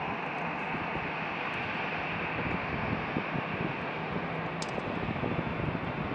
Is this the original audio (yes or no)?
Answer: yes